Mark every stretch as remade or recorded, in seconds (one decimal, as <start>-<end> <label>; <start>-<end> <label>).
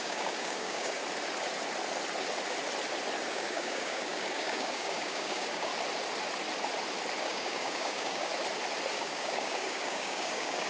0.0-1.0 remade; 1.0-3.3 recorded; 3.3-5.7 remade; 5.7-7.2 recorded; 7.2-8.3 remade; 8.3-8.9 recorded; 8.9-10.7 remade